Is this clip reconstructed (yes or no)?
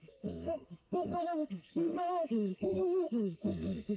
yes